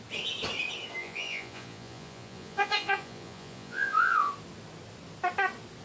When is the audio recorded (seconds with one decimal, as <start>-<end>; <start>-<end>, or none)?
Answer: 0.0-1.0; 4.3-5.8